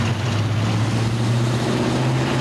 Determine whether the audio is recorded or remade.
recorded